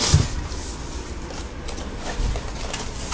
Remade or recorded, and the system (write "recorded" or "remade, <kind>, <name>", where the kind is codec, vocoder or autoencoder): recorded